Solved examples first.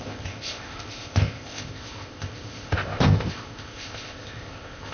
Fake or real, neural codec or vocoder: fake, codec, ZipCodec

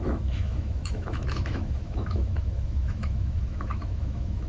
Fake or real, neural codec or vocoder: fake, autoencoder, DAC-VAE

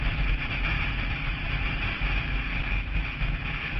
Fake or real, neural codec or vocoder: fake, autoencoder, DAC-VAE